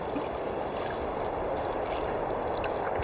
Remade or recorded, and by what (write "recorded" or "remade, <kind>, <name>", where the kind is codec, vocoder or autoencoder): recorded